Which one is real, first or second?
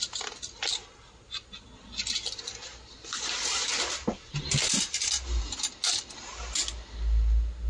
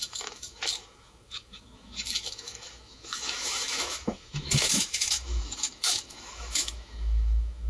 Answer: first